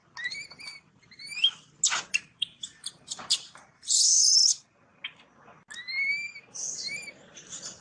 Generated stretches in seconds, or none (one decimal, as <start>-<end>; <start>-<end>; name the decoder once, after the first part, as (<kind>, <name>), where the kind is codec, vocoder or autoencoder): 2.0-4.4 (vocoder, BigVGAN v2); 7.3-7.8